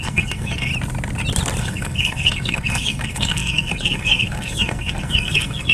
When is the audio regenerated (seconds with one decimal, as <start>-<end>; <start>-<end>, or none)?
0.0-0.7; 1.6-5.7